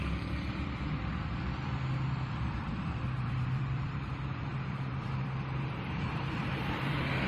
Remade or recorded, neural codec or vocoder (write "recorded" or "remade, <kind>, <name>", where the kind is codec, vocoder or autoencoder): remade, vocoder, BigVGAN v2